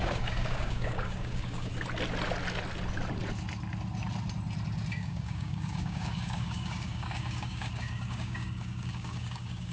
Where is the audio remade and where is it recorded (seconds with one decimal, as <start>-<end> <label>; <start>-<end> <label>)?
0.0-1.7 remade; 1.7-4.9 recorded; 4.9-9.7 remade